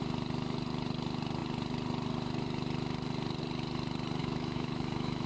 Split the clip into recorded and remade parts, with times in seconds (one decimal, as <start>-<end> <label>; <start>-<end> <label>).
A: 0.0-4.2 recorded; 4.2-5.3 remade